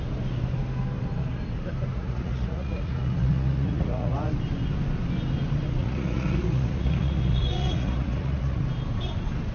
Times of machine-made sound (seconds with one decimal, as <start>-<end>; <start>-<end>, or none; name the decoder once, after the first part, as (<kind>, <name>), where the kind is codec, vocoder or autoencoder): 1.9-4.3 (vocoder, Vocos); 5.8-8.6